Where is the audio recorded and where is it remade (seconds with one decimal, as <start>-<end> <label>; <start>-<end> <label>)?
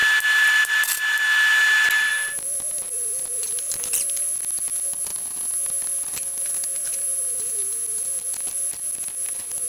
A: 0.0-9.7 recorded